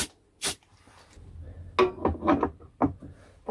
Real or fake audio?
real